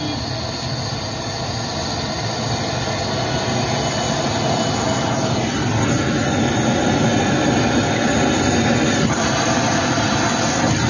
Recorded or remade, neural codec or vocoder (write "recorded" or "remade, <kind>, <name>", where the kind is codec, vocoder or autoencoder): recorded